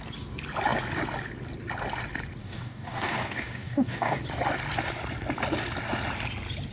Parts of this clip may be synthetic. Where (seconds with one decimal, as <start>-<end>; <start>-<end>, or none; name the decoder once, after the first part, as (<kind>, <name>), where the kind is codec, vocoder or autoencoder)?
2.4-4.2 (codec, DAC)